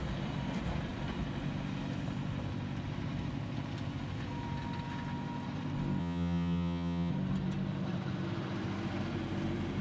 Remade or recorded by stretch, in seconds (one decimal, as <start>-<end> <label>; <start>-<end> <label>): 0.0-6.0 recorded; 6.0-7.1 remade; 7.1-9.8 recorded